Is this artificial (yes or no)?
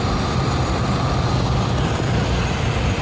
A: yes